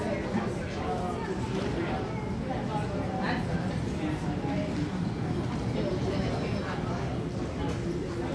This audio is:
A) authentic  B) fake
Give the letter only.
A